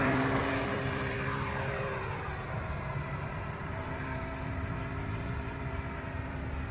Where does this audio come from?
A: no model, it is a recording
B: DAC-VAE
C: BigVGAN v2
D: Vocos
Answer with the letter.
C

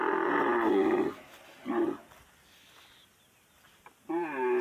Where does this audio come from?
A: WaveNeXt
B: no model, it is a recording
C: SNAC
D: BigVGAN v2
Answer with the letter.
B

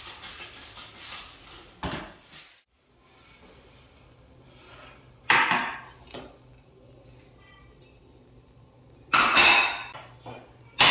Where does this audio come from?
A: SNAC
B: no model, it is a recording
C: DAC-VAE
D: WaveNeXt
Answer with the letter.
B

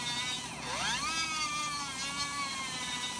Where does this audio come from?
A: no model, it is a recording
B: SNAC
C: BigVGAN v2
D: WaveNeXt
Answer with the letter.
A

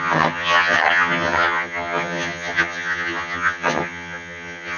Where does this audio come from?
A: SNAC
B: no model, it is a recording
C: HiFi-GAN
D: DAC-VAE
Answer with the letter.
C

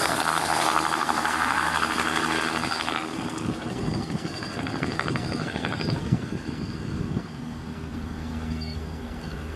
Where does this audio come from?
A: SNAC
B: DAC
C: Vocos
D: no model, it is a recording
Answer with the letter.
A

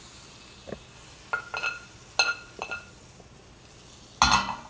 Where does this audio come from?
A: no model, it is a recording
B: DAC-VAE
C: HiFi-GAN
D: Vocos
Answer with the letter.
A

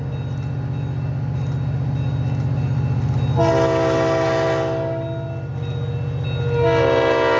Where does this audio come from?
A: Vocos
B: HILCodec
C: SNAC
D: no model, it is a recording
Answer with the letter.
D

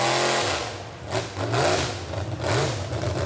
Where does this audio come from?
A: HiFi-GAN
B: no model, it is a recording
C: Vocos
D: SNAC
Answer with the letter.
B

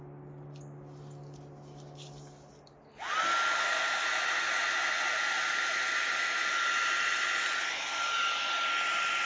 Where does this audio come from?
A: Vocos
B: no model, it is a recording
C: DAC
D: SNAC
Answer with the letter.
B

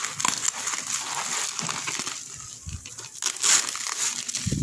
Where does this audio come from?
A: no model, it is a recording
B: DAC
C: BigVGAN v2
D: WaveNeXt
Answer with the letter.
A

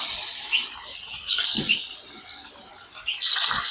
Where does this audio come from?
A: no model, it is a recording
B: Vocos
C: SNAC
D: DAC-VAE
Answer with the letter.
A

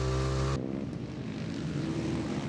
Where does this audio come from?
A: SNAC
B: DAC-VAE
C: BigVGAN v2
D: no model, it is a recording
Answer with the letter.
D